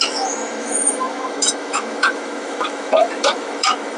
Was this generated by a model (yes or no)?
yes